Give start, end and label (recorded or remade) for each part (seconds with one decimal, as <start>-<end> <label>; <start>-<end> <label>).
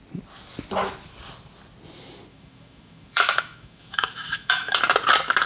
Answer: 0.0-2.3 recorded; 2.3-4.8 remade; 4.8-5.5 recorded